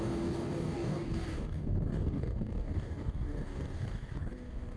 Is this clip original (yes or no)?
no